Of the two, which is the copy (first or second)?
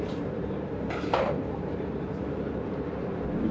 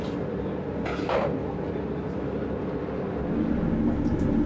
first